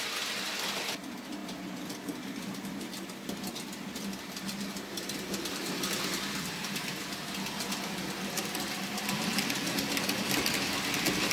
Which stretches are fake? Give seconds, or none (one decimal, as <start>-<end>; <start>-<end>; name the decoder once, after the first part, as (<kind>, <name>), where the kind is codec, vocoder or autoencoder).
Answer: none